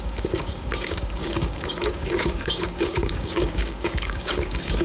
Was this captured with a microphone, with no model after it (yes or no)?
no